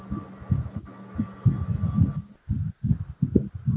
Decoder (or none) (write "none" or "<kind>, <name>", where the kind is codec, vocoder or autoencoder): none